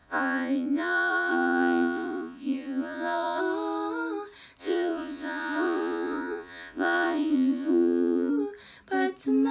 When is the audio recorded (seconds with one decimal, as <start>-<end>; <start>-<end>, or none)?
3.4-4.6; 8.3-9.5